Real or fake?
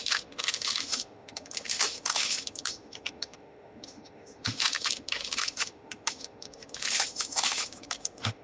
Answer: fake